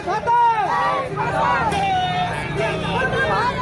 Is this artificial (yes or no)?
no